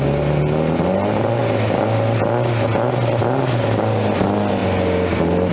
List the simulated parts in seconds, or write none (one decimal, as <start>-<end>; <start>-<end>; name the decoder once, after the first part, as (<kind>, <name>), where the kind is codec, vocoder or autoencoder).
none